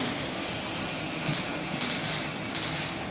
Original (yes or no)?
yes